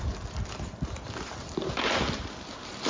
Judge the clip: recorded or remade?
recorded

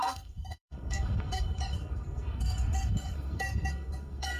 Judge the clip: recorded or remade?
remade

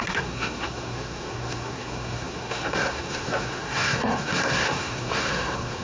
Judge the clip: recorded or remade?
remade